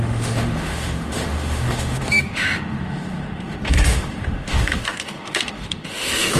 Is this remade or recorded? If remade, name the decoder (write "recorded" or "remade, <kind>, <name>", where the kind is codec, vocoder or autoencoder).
remade, autoencoder, DAC-VAE